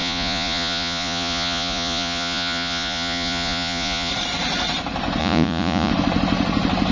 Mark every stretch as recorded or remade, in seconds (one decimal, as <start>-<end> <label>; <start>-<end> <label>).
0.0-4.1 remade; 4.1-5.2 recorded; 5.2-5.9 remade; 5.9-6.9 recorded